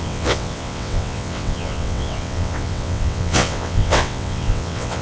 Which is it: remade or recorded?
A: remade